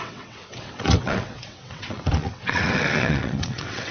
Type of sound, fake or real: fake